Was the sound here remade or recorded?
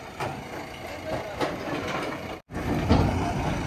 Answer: recorded